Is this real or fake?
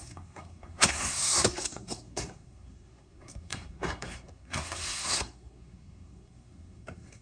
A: fake